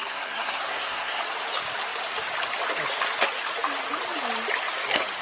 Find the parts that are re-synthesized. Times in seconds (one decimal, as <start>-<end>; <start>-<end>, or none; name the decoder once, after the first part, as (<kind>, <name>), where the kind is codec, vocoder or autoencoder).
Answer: 0.0-1.2 (codec, SNAC)

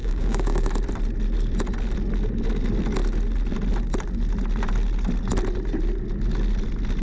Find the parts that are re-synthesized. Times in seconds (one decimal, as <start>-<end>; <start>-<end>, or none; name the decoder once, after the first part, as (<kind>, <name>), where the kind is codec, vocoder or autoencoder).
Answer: 0.0-0.7 (codec, DAC)

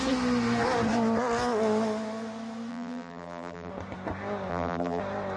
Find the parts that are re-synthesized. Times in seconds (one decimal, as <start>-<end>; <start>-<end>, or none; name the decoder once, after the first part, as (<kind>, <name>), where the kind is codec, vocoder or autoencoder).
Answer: 2.7-3.7 (vocoder, BigVGAN v2); 4.5-5.0

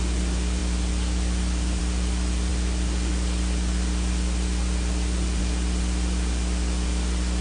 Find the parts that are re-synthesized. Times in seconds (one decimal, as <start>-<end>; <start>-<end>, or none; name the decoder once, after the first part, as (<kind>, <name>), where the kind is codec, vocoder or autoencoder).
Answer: none

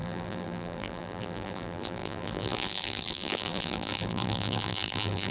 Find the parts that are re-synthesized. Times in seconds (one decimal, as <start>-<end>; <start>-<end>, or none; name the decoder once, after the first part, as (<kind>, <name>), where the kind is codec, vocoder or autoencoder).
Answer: 0.0-5.3 (vocoder, BigVGAN v2)

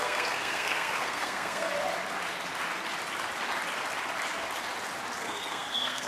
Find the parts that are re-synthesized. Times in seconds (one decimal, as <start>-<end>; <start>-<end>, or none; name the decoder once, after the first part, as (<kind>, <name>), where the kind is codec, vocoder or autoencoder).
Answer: 0.0-1.7 (codec, SNAC); 5.2-6.1